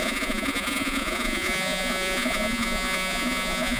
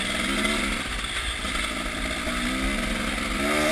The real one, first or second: second